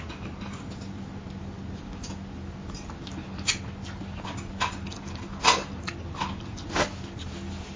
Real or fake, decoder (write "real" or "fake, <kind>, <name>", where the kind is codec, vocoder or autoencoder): real